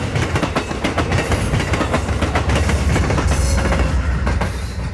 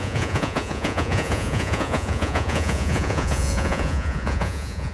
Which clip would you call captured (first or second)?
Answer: first